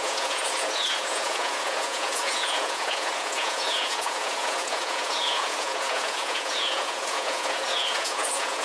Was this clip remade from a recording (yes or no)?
yes